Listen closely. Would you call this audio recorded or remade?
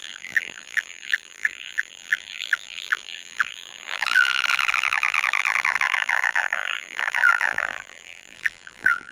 remade